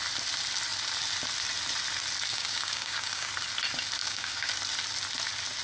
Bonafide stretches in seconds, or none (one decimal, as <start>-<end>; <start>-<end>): 0.0-2.3; 3.3-4.0; 4.5-5.6